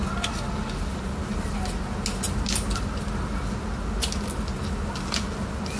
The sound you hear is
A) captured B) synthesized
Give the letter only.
A